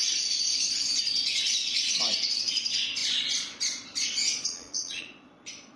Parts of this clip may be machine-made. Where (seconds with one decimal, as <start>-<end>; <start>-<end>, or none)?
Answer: 1.0-5.8